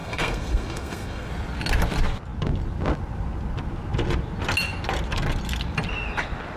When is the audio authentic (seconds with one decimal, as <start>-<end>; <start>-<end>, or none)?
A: 1.3-6.6